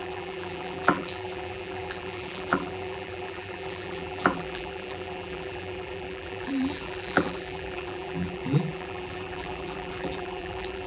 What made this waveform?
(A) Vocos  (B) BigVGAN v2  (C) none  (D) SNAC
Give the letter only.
B